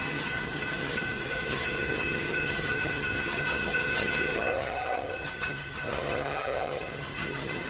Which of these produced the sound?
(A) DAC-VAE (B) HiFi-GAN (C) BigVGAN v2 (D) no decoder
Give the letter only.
B